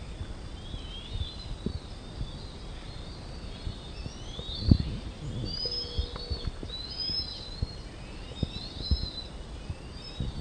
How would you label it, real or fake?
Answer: real